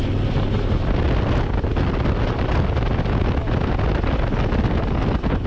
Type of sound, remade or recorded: recorded